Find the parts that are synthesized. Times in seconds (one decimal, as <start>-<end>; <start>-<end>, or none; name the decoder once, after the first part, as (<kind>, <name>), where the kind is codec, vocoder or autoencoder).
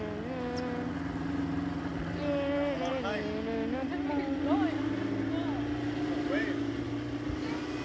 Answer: none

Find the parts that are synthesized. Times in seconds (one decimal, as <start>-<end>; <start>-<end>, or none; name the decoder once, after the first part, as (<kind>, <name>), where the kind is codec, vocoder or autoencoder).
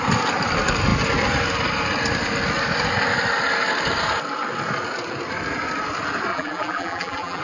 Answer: 6.3-7.4 (vocoder, BigVGAN v2)